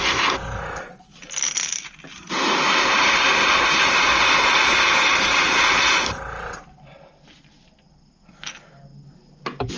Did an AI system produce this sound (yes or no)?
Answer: no